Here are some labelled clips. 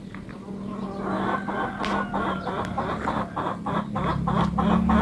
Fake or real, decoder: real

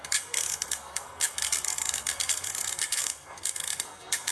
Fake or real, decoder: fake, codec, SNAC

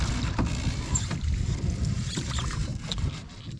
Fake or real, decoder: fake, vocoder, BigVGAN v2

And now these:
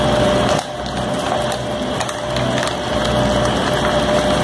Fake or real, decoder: real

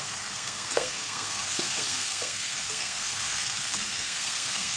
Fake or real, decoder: fake, codec, SNAC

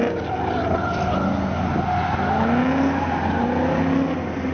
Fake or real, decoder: real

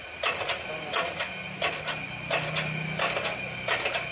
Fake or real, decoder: real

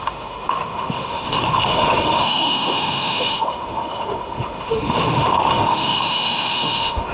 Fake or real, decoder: fake, autoencoder, DAC-VAE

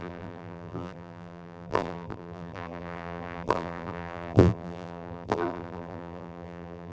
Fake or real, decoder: fake, vocoder, BigVGAN v2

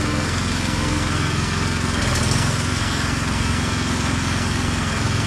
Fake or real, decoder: fake, codec, SNAC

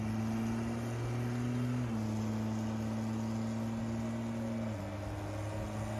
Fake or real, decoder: real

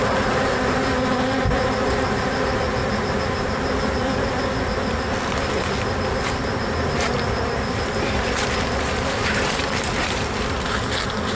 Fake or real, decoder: real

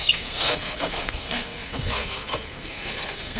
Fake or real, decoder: fake, codec, SNAC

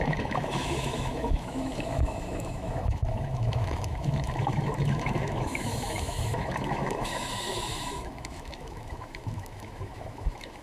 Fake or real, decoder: fake, autoencoder, DAC-VAE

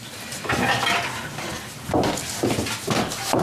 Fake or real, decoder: real